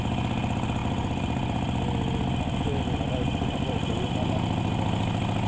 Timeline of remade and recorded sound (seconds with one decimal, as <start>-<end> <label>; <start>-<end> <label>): 0.0-0.8 recorded; 0.8-4.1 remade; 4.1-5.5 recorded